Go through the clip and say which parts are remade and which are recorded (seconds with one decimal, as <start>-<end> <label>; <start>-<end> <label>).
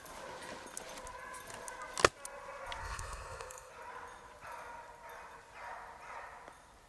0.0-2.8 recorded; 2.8-3.7 remade; 3.7-6.9 recorded